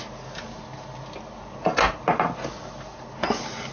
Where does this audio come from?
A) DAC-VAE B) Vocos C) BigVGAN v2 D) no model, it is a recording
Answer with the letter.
D